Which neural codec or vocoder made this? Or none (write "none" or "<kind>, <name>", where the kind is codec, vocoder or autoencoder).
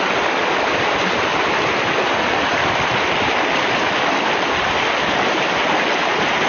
none